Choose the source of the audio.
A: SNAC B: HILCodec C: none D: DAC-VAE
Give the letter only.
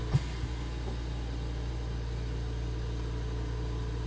C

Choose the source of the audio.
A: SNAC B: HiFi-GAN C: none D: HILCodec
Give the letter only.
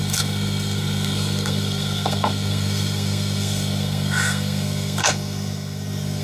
A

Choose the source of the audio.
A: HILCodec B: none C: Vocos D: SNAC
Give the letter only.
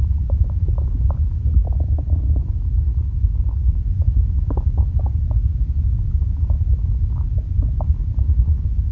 B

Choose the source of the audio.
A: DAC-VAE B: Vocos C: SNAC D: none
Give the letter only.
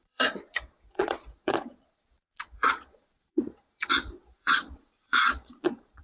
B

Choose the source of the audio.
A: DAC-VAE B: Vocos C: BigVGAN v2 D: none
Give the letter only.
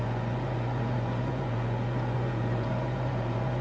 B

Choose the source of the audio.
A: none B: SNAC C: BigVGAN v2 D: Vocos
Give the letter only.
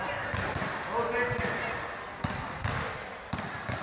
A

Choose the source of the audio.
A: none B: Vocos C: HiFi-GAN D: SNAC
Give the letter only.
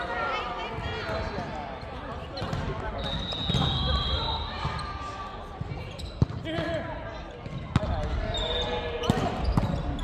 A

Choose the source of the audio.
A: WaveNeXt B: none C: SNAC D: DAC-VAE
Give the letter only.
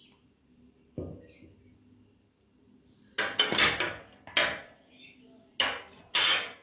B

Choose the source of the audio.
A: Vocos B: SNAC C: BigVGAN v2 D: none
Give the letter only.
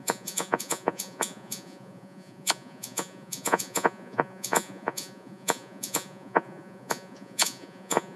A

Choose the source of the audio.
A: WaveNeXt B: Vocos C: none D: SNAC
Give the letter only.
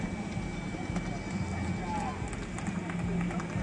C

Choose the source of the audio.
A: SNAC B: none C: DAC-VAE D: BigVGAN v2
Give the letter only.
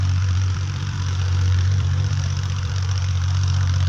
D